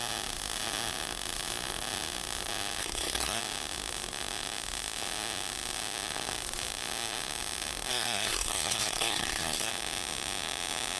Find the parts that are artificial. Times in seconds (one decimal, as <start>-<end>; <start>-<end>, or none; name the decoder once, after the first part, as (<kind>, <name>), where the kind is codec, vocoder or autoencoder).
2.8-3.4 (codec, SNAC); 7.9-9.7